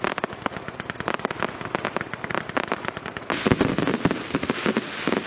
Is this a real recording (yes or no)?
yes